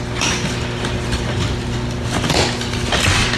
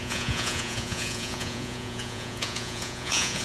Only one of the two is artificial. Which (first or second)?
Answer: second